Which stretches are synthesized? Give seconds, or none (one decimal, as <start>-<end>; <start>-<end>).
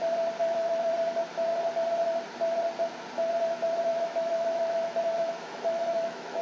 0.4-0.9; 3.9-6.4